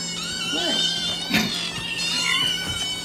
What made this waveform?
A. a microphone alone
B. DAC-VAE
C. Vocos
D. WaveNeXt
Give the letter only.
A